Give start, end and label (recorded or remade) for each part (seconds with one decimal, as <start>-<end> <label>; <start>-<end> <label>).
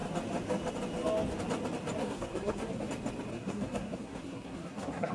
0.0-2.0 recorded; 2.0-2.9 remade; 2.9-3.3 recorded; 3.3-5.1 remade